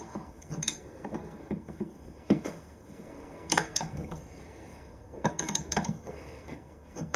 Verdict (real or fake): fake